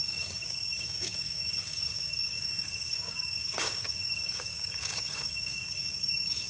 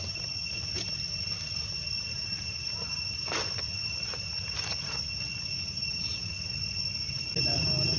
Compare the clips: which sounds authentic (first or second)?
second